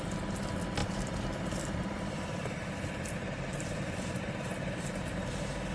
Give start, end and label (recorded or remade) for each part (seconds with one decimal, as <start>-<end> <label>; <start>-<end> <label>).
0.0-0.8 recorded; 0.8-4.2 remade; 4.2-5.7 recorded